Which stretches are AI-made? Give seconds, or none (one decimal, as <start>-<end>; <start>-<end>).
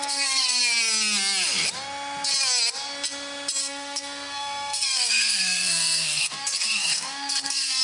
0.0-0.6; 3.6-7.8